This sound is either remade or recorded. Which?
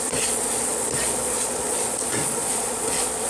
remade